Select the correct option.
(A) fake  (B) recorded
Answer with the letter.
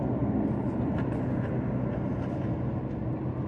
B